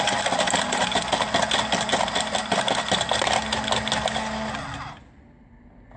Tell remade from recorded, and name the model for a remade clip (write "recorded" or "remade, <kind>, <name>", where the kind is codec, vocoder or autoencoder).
recorded